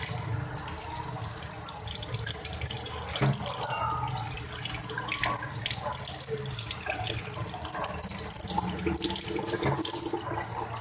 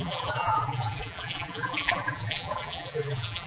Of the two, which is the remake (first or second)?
second